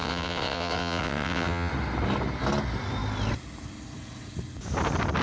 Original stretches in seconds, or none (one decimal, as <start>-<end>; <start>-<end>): 1.7-5.2